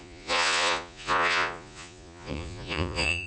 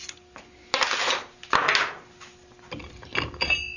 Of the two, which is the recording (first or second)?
second